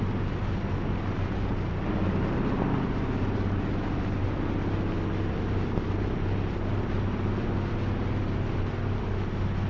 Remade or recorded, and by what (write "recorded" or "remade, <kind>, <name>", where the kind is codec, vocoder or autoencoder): recorded